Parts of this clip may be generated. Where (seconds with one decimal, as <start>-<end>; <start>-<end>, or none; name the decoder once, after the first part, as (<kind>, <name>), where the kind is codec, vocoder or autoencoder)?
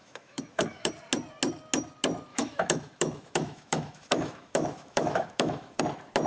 0.0-0.9 (autoencoder, DAC-VAE); 2.3-5.8